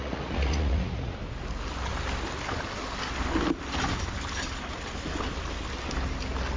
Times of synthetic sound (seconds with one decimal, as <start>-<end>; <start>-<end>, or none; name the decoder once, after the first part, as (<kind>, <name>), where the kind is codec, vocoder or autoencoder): 0.0-1.2 (vocoder, Vocos)